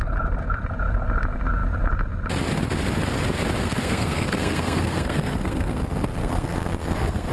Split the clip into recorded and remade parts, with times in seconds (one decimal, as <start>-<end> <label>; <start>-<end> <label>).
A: 0.0-3.6 recorded; 3.6-5.8 remade; 5.8-6.2 recorded; 6.2-7.3 remade